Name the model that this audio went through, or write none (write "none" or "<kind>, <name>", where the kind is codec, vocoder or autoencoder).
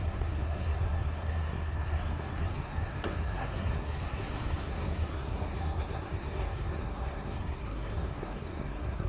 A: codec, SNAC